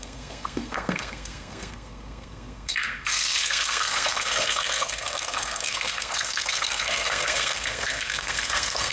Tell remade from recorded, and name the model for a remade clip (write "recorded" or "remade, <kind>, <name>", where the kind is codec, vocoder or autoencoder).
remade, codec, SNAC